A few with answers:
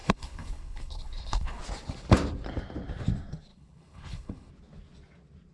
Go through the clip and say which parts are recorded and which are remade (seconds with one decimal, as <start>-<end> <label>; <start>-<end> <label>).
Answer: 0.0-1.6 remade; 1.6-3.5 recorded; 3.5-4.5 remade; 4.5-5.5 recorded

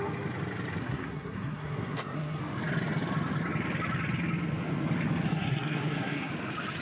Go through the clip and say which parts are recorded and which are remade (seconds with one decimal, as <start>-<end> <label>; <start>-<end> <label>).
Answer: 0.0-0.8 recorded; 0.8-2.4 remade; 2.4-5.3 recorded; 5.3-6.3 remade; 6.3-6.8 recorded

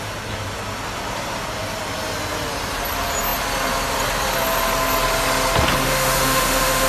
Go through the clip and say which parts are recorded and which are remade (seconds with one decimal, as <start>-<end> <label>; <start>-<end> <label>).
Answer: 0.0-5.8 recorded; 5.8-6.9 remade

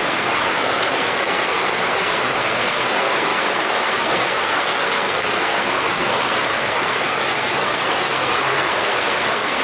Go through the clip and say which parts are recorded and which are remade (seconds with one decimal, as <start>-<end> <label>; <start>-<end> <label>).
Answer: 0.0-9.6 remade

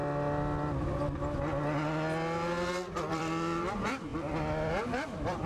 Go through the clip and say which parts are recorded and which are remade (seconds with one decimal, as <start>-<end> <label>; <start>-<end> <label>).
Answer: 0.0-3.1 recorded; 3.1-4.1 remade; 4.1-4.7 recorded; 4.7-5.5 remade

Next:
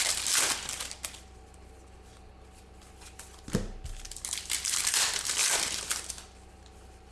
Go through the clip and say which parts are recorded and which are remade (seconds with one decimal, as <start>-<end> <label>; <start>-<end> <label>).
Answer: 0.0-7.1 recorded

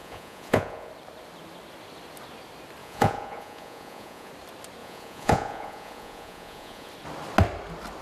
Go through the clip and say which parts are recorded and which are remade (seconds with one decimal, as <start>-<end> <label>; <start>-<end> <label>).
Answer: 0.0-0.9 remade; 0.9-2.8 recorded; 2.8-4.3 remade; 4.3-4.8 recorded; 4.8-6.9 remade; 6.9-8.0 recorded

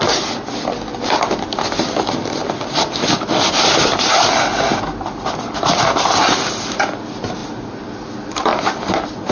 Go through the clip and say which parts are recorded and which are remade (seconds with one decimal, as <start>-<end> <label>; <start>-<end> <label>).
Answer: 0.0-7.4 recorded; 7.4-7.9 remade; 7.9-8.5 recorded; 8.5-9.3 remade